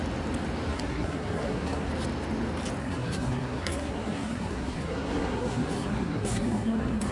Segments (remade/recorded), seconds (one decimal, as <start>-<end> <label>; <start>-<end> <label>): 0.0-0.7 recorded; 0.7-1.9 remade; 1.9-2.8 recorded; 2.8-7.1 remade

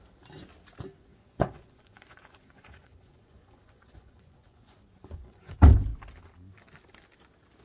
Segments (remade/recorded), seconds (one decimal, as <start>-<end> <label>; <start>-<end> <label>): 0.0-1.1 recorded; 1.1-5.5 remade; 5.5-7.6 recorded

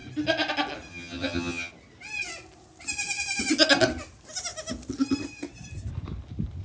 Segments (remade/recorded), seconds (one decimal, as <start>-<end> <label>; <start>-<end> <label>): 0.0-0.9 recorded; 0.9-1.7 remade; 1.7-6.6 recorded

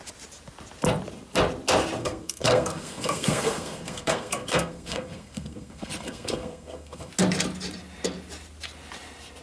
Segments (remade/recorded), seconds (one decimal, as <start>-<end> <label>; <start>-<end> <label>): 0.0-2.0 recorded; 2.0-7.1 remade; 7.1-9.4 recorded